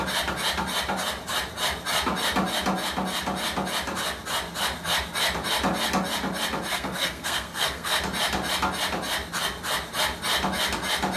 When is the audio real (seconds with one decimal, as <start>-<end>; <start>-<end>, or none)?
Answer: 0.0-6.7; 8.0-11.2